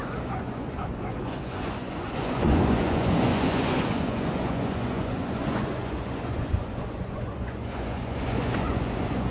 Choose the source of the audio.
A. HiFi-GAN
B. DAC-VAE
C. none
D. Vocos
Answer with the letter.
D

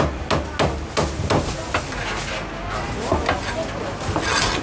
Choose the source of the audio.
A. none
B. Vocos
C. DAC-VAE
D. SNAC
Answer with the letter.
A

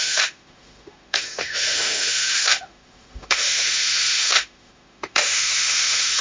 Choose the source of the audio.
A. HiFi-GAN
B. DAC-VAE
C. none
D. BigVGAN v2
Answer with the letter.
B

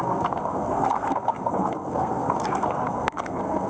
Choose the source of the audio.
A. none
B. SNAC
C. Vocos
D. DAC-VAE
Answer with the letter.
B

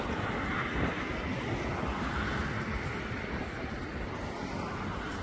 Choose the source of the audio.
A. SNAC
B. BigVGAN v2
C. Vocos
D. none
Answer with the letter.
D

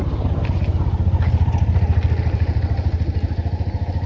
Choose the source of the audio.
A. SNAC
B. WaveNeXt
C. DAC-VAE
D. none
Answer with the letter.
D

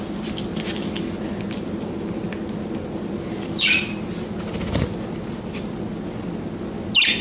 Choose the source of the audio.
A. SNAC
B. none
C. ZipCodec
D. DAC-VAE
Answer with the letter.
B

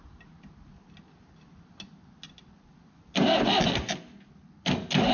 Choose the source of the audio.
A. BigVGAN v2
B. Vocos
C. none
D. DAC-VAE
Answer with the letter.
C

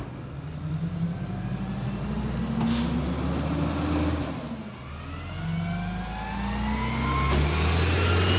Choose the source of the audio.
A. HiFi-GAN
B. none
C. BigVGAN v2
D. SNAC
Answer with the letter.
B